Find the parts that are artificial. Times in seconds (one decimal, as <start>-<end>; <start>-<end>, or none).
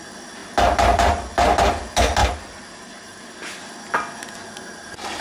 none